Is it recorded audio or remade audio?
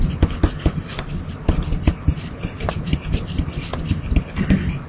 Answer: recorded